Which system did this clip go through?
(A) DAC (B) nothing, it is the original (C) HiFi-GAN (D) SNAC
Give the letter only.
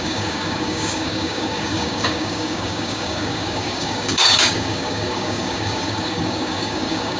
A